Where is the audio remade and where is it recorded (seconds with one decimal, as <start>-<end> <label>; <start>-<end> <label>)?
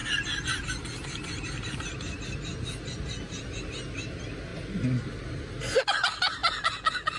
0.0-1.7 remade; 1.7-7.2 recorded